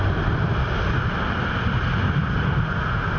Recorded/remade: recorded